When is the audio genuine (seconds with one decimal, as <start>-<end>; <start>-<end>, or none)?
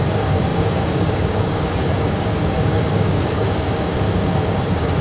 none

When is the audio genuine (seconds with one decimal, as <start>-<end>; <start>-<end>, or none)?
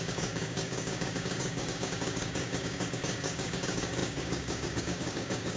none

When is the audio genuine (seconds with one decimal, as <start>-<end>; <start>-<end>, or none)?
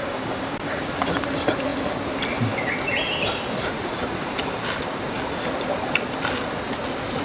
0.9-7.2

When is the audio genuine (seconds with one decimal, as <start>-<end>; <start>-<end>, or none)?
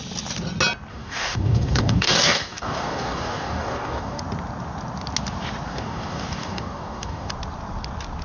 0.0-0.9; 4.2-5.7; 7.3-8.2